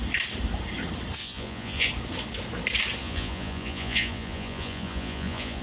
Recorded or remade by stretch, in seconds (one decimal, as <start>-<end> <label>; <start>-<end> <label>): 0.0-1.2 recorded; 1.2-1.9 remade; 1.9-3.0 recorded; 3.0-5.6 remade